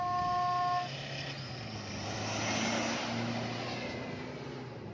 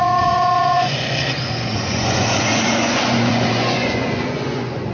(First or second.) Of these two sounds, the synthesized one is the second